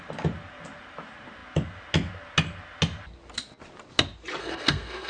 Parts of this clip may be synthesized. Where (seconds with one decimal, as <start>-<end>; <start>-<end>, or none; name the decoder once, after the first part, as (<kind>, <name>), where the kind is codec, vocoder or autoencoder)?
4.4-5.1 (codec, SNAC)